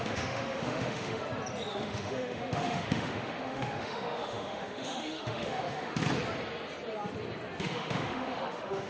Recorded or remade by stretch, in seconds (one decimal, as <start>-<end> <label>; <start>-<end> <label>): 0.0-1.2 remade; 1.2-1.7 recorded; 1.7-6.0 remade; 6.0-7.6 recorded; 7.6-8.9 remade

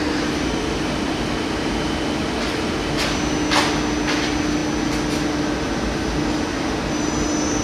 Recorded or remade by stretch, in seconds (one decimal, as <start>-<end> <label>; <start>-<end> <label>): 0.0-7.6 recorded